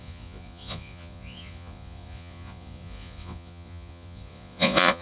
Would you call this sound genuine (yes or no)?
no